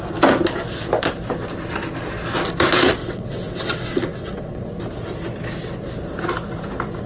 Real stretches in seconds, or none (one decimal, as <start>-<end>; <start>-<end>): 0.0-3.0; 4.7-7.1